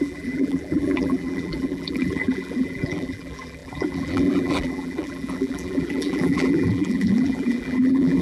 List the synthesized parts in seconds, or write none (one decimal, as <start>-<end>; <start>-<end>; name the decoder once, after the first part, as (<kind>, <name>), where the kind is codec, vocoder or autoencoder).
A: 0.0-8.2 (vocoder, BigVGAN v2)